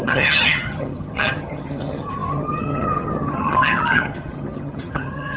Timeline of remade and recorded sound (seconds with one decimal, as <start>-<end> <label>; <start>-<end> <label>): 0.0-5.4 remade